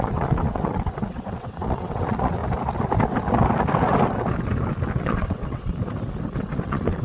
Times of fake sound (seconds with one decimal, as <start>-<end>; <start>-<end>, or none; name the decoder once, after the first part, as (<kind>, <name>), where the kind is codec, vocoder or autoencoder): 0.0-2.4 (vocoder, WaveNeXt); 5.0-5.7; 6.4-7.0